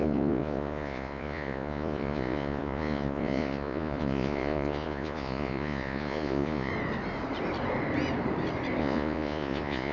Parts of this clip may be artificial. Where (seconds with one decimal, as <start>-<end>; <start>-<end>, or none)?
0.0-6.7; 8.8-9.9